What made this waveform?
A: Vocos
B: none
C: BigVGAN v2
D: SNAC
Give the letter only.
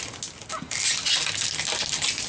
B